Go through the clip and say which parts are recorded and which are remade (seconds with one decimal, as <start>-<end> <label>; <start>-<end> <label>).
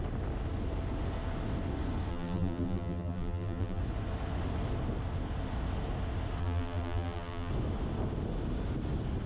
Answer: 0.0-2.1 recorded; 2.1-3.8 remade; 3.8-6.4 recorded; 6.4-7.5 remade; 7.5-9.3 recorded